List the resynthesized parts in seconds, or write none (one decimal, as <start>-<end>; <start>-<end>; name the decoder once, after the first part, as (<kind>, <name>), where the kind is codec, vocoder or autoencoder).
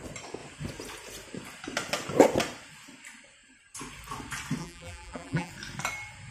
4.6-5.5 (vocoder, BigVGAN v2)